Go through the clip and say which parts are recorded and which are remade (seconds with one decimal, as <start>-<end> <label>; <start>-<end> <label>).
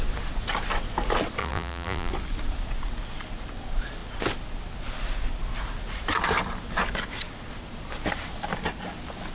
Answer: 0.0-1.4 recorded; 1.4-2.1 remade; 2.1-9.3 recorded